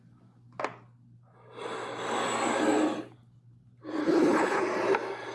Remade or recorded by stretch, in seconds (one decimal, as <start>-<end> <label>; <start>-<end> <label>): 0.0-4.0 recorded; 4.0-4.6 remade; 4.6-5.3 recorded